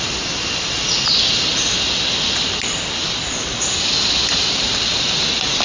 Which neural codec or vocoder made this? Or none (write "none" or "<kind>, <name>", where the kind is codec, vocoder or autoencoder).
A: none